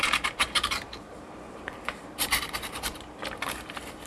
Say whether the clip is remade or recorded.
remade